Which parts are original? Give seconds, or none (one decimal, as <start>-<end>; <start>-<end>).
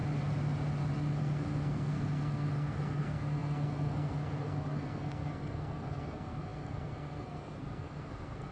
0.0-1.2